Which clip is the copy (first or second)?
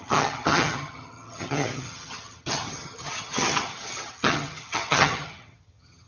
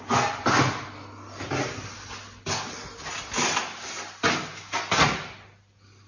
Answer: first